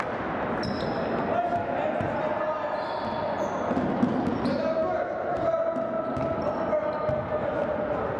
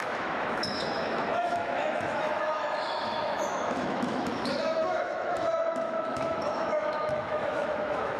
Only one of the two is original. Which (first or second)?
first